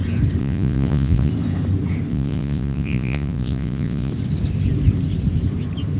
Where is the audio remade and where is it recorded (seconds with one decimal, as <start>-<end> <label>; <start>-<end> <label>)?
0.0-0.4 recorded; 0.4-1.3 remade; 1.3-2.1 recorded; 2.1-4.1 remade; 4.1-6.0 recorded